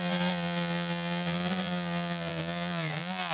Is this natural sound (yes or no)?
no